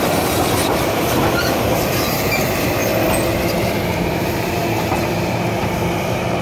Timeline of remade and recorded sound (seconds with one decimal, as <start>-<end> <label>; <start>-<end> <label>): 0.0-2.8 remade; 2.8-3.6 recorded; 3.6-6.4 remade